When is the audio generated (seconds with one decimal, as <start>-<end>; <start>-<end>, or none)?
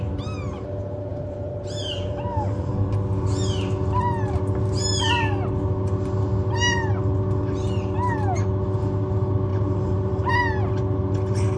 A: 1.1-2.7; 9.5-10.3